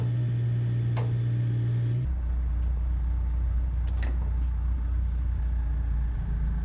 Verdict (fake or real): real